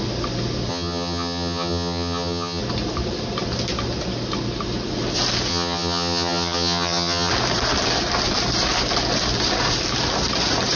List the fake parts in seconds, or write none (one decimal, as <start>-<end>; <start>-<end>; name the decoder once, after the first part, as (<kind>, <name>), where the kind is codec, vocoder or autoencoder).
0.7-2.6 (vocoder, HiFi-GAN); 5.5-7.3